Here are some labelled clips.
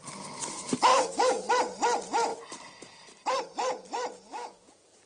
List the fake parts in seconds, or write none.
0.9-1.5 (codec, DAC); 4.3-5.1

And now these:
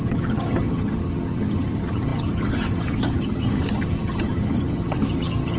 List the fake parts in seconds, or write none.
0.0-5.6 (vocoder, HiFi-GAN)

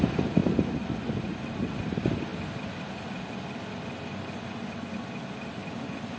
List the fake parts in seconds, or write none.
0.0-0.4 (vocoder, BigVGAN v2); 1.7-2.3

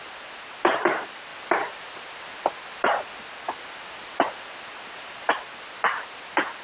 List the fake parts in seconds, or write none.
none

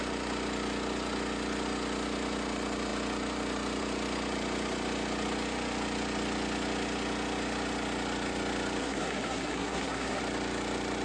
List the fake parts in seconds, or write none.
8.8-10.2 (codec, SNAC)

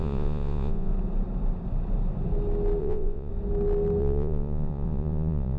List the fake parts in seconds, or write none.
0.0-0.9 (vocoder, Vocos); 2.8-3.3; 4.0-5.6